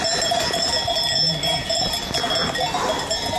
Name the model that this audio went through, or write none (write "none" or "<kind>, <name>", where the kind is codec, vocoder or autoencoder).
none